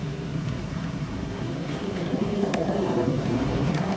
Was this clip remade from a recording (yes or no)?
yes